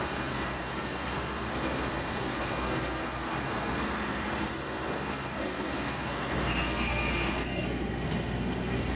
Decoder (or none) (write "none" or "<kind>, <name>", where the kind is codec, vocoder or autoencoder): codec, SNAC